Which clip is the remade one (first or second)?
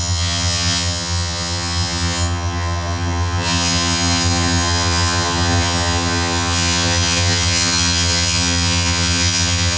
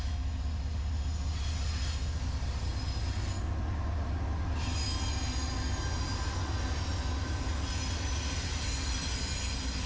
first